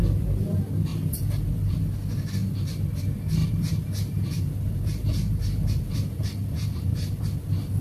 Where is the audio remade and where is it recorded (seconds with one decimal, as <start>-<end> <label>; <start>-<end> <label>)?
0.0-0.9 recorded; 0.9-1.4 remade; 1.4-3.4 recorded; 3.4-7.2 remade; 7.2-7.8 recorded